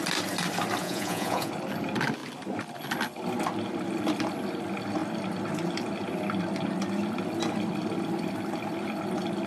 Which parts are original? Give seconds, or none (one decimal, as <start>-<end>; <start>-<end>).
0.0-0.8; 1.5-9.5

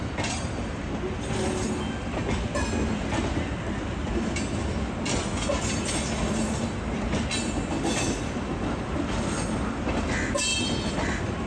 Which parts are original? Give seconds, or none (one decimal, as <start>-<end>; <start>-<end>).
0.0-11.5